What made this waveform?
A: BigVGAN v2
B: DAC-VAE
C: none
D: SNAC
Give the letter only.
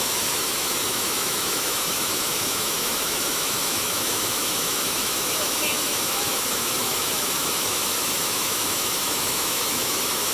B